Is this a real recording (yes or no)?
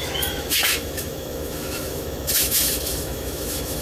no